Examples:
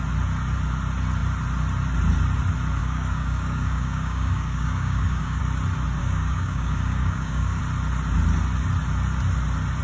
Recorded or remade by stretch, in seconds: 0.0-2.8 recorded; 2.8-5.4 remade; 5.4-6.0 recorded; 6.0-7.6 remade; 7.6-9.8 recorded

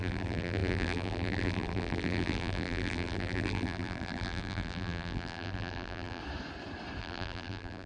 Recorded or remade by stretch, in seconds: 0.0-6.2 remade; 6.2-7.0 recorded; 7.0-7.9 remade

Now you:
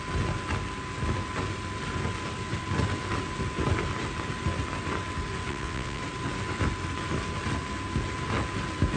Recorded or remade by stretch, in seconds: 0.0-5.5 recorded; 5.5-6.0 remade; 6.0-9.0 recorded